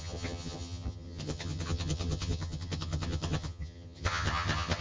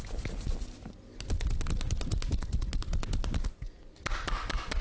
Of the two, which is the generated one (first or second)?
first